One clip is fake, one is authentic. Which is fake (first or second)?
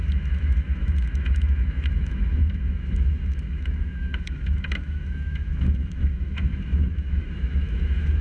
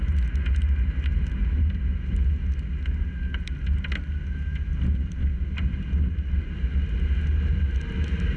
first